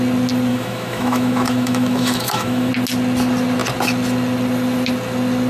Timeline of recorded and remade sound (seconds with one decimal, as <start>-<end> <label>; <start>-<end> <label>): 0.0-0.5 recorded; 0.5-2.7 remade; 2.7-5.5 recorded